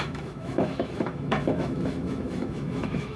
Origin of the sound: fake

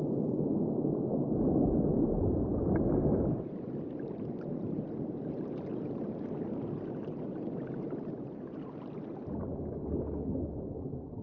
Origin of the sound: real